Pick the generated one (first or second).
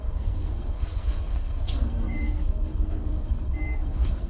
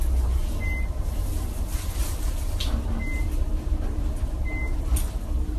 first